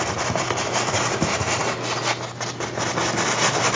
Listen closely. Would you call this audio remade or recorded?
recorded